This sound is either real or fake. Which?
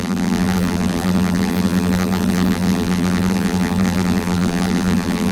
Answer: fake